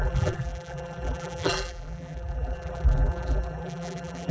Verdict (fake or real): fake